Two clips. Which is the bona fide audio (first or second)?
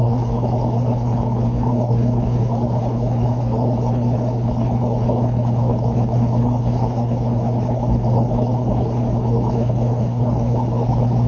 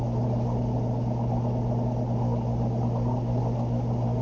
second